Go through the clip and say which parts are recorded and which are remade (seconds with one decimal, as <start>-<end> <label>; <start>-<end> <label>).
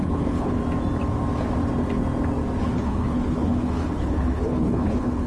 0.0-0.6 remade; 0.6-2.6 recorded; 2.6-5.3 remade